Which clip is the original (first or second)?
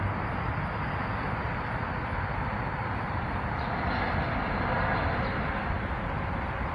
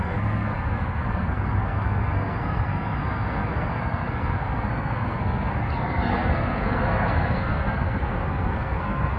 first